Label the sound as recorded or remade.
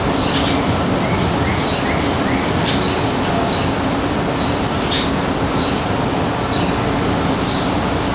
recorded